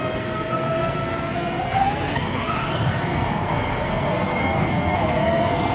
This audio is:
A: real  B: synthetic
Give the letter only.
B